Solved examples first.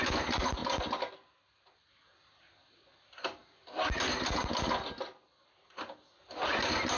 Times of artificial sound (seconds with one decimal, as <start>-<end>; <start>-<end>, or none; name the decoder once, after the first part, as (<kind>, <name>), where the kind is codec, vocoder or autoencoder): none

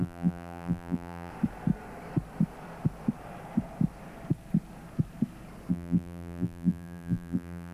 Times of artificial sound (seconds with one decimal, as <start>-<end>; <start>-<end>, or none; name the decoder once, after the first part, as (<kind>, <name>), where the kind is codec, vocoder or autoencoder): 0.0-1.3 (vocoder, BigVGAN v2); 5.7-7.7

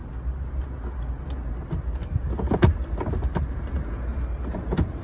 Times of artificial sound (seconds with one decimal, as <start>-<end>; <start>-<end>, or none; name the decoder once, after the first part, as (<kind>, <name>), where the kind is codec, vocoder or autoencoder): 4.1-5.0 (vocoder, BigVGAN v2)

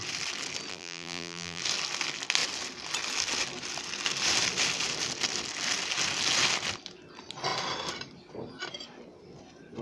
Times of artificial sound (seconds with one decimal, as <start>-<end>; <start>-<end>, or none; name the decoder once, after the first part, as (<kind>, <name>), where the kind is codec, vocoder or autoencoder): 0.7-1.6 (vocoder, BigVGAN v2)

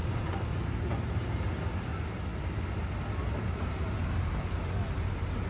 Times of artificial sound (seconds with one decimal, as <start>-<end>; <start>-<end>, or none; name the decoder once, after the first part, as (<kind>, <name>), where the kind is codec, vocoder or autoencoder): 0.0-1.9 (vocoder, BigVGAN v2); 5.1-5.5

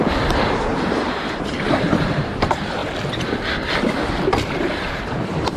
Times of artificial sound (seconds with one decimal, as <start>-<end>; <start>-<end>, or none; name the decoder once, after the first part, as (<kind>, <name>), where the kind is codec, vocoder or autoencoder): 0.0-2.8 (vocoder, BigVGAN v2); 4.9-5.6